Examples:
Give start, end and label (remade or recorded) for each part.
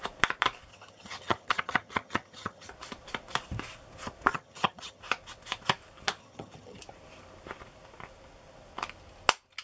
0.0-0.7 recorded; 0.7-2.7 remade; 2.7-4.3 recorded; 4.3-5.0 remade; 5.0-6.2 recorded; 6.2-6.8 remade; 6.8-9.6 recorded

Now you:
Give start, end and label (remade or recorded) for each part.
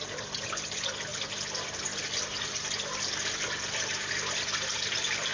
0.0-5.3 recorded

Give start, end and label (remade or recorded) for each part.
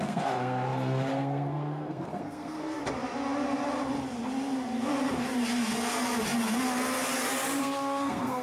0.0-2.8 remade; 2.8-7.6 recorded; 7.6-8.4 remade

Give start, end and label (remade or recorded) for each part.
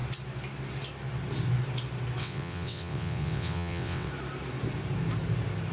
0.0-2.2 recorded; 2.2-4.1 remade; 4.1-5.7 recorded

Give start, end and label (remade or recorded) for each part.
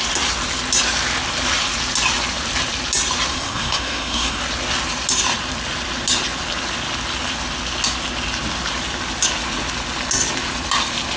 0.0-3.3 recorded; 3.3-4.4 remade; 4.4-11.2 recorded